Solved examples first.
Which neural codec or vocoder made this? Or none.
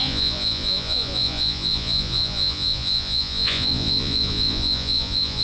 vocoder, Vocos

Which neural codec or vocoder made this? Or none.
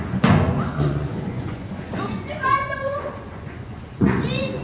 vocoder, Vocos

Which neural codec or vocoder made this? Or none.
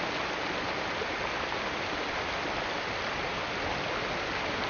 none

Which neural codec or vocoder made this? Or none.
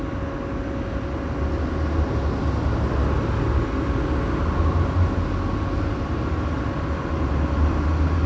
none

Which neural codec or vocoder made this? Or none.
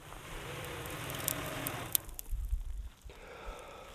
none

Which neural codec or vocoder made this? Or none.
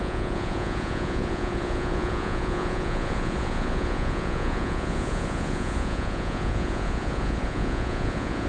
vocoder, Vocos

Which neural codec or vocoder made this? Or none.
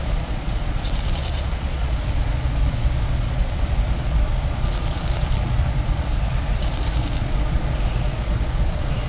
vocoder, Vocos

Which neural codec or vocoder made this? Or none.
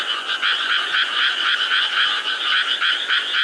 vocoder, Vocos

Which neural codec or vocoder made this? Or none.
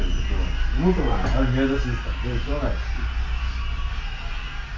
none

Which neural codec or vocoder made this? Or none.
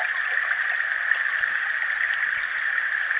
none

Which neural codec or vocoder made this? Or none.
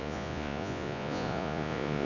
vocoder, Vocos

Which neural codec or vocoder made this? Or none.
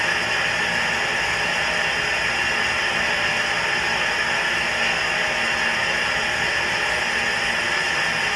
none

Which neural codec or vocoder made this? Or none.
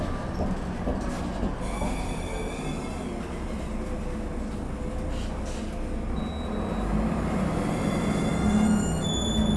none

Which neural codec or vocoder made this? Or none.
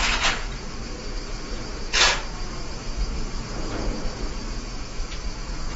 vocoder, Vocos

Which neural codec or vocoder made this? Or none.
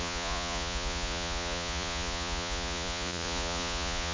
vocoder, Vocos